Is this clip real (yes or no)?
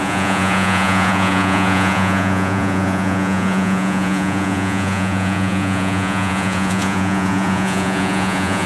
no